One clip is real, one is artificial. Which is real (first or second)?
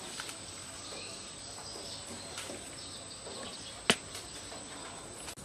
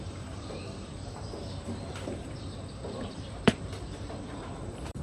first